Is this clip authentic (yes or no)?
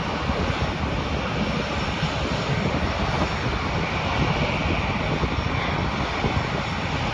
yes